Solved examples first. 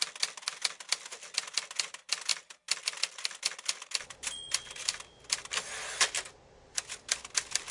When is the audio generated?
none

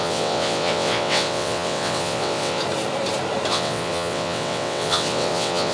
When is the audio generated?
0.0-2.6 (vocoder, WaveNeXt); 3.5-5.7

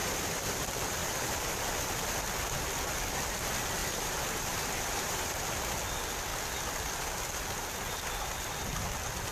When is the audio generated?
0.0-0.5 (vocoder, BigVGAN v2); 1.0-1.6; 3.8-5.4

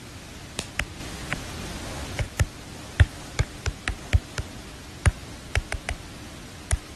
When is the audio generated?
none

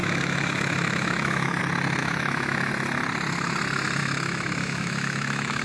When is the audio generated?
0.0-1.6 (autoencoder, DAC-VAE); 2.0-2.7; 4.0-5.6

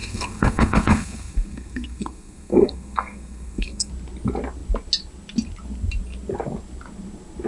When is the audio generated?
0.0-3.9 (codec, SNAC)

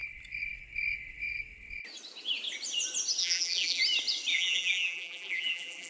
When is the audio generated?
3.2-3.8 (vocoder, BigVGAN v2); 4.3-5.9